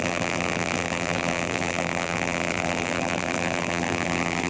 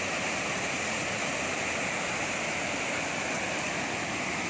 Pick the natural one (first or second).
second